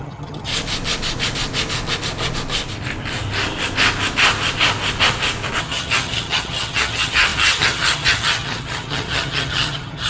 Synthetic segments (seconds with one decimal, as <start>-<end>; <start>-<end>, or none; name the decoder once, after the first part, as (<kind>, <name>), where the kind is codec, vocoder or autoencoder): 0.0-0.5 (vocoder, HiFi-GAN); 5.6-10.1